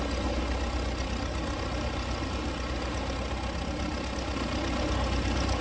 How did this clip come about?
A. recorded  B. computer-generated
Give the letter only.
A